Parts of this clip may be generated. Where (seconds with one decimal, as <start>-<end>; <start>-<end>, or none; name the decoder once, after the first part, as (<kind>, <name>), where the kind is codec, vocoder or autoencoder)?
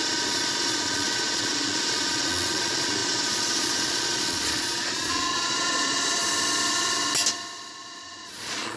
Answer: 0.0-6.2 (vocoder, Vocos); 7.7-8.8